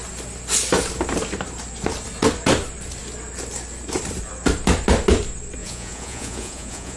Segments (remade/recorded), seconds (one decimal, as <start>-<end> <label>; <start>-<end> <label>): 0.0-5.6 recorded; 5.6-7.0 remade